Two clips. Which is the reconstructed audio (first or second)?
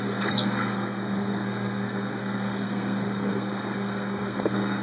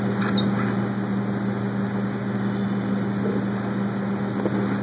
first